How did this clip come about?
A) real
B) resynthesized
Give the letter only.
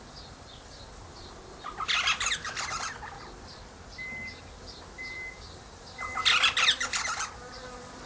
B